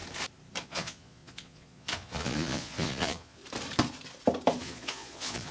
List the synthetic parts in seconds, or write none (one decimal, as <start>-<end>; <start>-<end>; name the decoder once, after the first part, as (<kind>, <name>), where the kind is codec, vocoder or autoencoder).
0.6-3.4 (vocoder, Vocos); 4.6-5.5